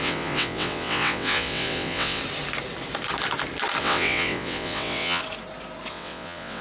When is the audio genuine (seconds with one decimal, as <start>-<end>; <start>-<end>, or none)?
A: 2.2-3.8; 5.2-5.9